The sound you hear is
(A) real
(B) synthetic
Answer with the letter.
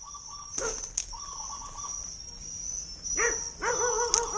A